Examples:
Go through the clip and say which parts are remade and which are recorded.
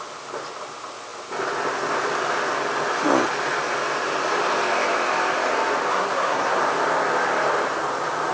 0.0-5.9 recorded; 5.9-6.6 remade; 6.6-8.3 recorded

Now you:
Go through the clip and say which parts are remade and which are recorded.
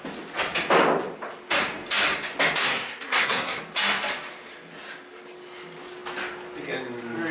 0.0-2.6 recorded; 2.6-3.6 remade; 3.6-7.3 recorded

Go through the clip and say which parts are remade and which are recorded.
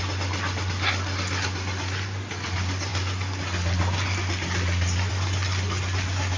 0.0-6.4 recorded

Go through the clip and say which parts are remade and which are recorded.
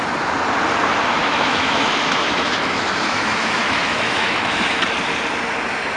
0.0-1.2 recorded; 1.2-4.8 remade; 4.8-6.0 recorded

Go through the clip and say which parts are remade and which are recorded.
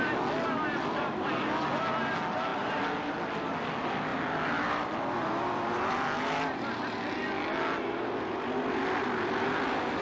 0.0-10.0 recorded